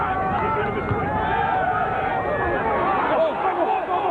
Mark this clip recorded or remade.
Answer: recorded